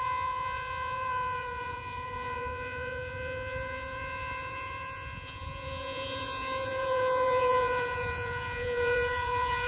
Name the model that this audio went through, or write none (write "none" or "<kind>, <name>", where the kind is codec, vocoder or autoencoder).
vocoder, Vocos